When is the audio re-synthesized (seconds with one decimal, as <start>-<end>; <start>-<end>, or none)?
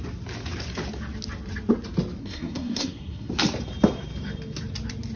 2.2-3.3